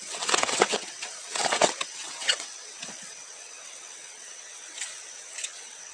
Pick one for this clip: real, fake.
fake